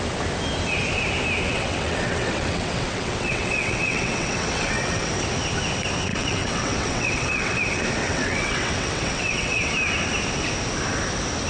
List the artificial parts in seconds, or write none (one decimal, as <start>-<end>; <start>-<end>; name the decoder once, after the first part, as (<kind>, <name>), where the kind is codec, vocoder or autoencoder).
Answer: 1.5-5.1 (vocoder, WaveNeXt); 6.1-7.6; 8.0-9.7